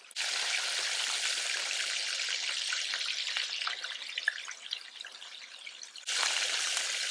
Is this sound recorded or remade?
recorded